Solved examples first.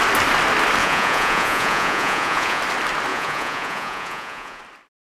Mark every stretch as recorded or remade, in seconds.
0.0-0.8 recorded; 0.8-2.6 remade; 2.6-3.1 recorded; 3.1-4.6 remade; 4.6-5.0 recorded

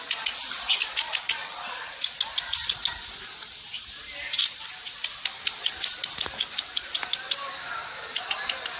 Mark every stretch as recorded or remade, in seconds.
0.0-8.8 recorded

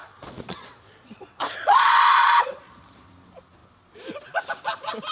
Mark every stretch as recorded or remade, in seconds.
0.0-3.1 remade; 3.1-5.1 recorded

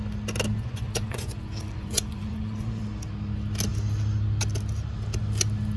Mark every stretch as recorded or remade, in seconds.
0.0-0.5 recorded; 0.5-2.8 remade; 2.8-5.8 recorded